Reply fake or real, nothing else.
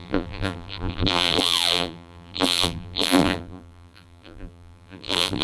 fake